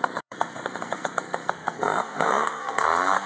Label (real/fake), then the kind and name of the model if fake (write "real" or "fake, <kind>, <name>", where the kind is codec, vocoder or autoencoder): fake, codec, SNAC